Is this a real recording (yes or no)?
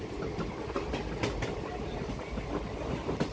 yes